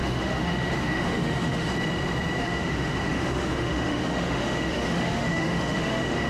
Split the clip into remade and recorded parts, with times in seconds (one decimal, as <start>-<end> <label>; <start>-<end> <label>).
0.0-1.7 remade; 1.7-2.4 recorded; 2.4-6.3 remade